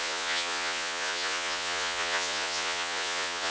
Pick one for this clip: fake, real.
fake